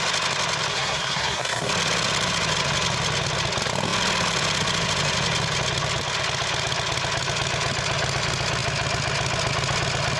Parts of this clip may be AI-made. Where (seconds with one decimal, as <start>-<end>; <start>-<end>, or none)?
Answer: 0.7-1.7